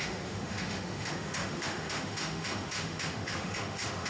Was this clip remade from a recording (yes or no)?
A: yes